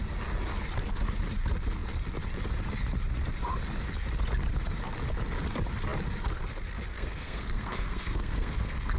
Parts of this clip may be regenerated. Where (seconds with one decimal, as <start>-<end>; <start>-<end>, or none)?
6.9-9.0